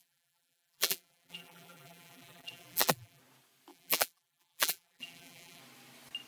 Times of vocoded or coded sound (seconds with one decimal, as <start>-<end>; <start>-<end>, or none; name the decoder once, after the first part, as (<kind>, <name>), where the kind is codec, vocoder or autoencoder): 0.0-3.2 (vocoder, BigVGAN v2); 3.7-5.6